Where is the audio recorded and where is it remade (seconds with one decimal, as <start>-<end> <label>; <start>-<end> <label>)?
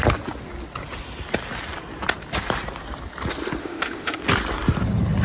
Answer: 0.0-3.6 recorded; 3.6-4.2 remade; 4.2-5.2 recorded